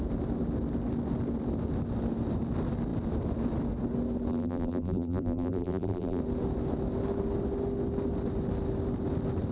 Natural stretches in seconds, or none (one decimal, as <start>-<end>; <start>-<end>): 0.0-4.3; 6.2-9.5